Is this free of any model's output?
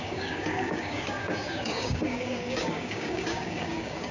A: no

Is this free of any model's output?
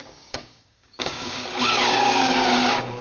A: no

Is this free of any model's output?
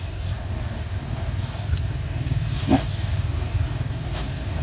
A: no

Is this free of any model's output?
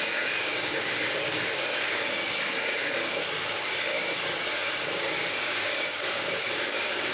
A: no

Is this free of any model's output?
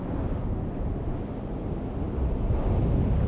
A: yes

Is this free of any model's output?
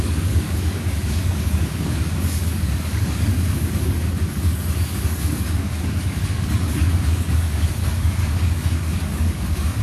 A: no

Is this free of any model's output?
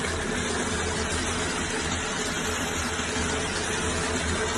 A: yes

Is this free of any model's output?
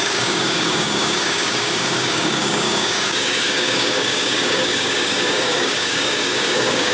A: no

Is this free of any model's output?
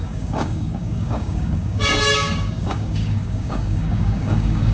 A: no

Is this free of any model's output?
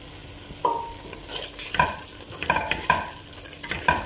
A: yes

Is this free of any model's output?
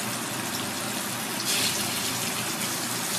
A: yes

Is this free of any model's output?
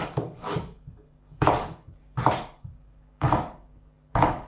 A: no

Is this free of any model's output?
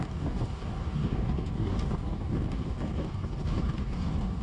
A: no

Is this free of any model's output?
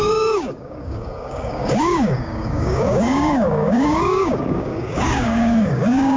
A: no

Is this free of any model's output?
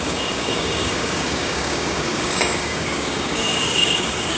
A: no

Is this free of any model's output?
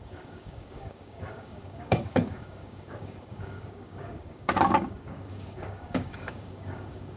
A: no